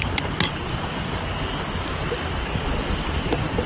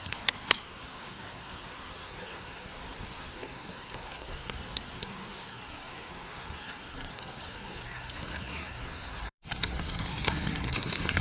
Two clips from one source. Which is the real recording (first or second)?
first